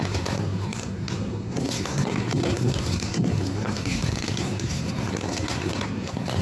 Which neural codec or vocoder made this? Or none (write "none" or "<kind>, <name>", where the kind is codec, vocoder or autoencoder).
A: codec, SNAC